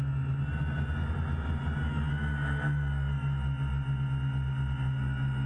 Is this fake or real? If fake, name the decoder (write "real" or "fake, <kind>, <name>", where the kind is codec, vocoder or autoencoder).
real